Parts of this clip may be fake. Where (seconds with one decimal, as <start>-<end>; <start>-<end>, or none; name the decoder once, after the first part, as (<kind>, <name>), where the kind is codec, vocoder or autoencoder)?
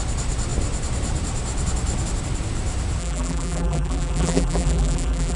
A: 3.0-5.4 (vocoder, BigVGAN v2)